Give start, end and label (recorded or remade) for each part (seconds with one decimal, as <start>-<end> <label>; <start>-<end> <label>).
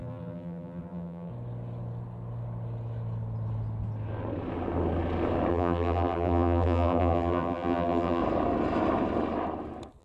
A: 0.0-1.3 remade; 1.3-5.5 recorded; 5.5-8.2 remade; 8.2-10.0 recorded